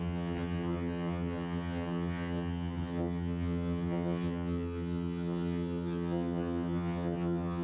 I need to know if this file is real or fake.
fake